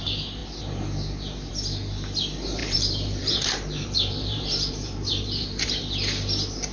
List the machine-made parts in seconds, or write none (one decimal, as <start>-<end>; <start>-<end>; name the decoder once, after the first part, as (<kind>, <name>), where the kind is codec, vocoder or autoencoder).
2.6-5.7 (vocoder, BigVGAN v2)